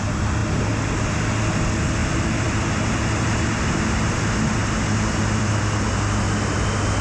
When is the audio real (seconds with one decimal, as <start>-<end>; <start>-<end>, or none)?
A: 0.0-2.0; 3.0-4.6; 5.6-7.0